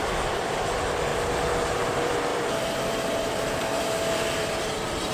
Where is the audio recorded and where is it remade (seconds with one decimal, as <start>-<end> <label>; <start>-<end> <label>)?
0.0-1.1 remade; 1.1-1.9 recorded; 1.9-5.1 remade